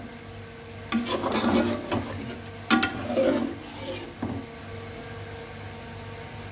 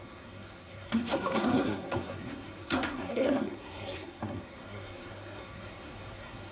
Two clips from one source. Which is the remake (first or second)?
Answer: second